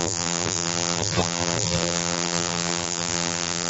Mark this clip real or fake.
fake